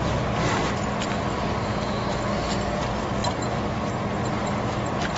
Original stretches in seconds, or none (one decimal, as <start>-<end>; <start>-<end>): 0.0-1.7; 2.3-5.2